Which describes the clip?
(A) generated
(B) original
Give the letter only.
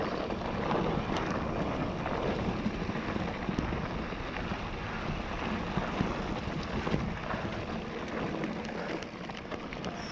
B